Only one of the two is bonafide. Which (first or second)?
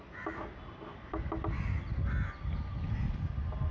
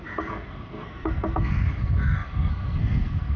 first